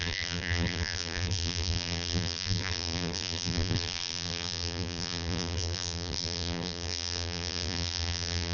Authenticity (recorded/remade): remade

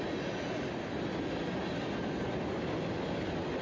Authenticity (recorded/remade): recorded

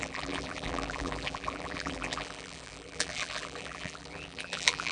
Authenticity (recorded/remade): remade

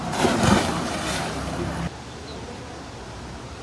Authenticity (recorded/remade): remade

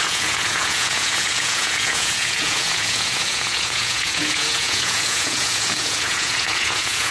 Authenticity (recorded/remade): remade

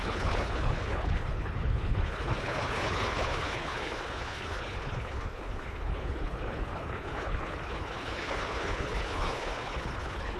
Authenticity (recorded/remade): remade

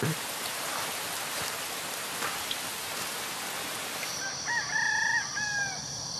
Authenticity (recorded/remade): remade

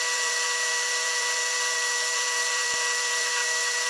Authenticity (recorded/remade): remade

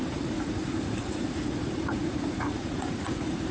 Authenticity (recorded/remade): remade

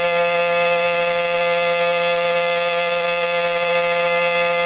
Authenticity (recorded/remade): remade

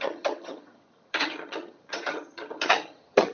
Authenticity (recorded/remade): remade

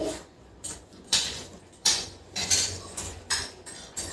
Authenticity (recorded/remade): remade